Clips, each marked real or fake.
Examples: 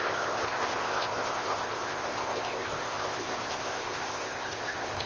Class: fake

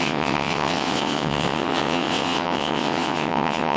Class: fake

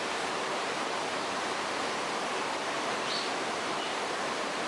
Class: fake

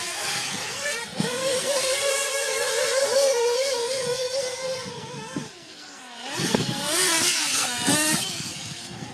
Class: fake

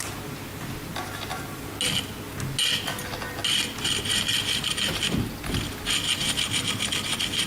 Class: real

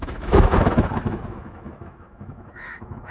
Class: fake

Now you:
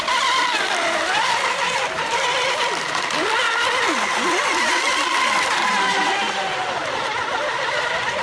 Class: real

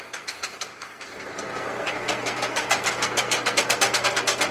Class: fake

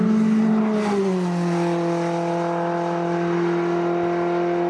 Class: real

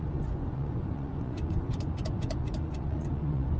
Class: fake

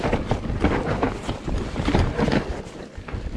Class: real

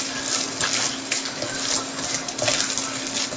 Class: real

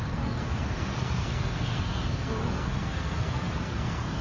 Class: fake